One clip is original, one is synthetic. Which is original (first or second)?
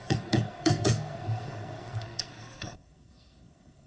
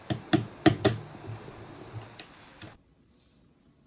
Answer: second